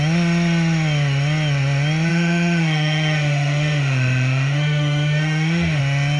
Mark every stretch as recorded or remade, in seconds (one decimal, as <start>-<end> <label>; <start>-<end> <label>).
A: 0.0-2.1 recorded; 2.1-5.8 remade; 5.8-6.2 recorded